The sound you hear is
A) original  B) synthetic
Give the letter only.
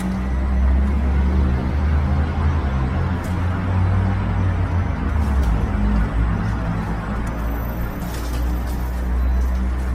A